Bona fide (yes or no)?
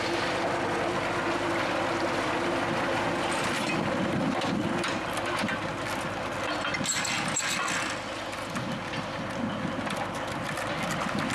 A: yes